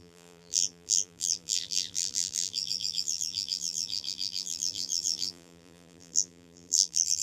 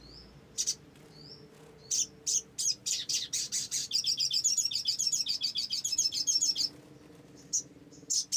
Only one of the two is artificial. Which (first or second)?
first